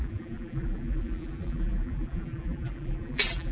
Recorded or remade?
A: remade